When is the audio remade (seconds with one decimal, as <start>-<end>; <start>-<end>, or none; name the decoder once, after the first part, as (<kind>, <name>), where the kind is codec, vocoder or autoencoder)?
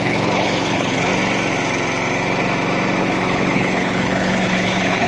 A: 0.0-1.1 (codec, HILCodec); 3.0-5.1